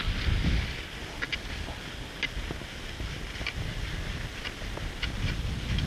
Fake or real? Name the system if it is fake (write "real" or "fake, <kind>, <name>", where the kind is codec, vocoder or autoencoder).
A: real